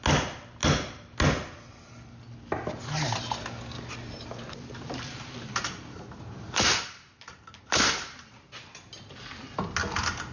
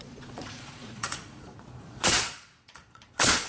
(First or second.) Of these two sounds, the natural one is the first